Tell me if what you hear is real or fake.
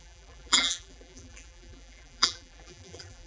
fake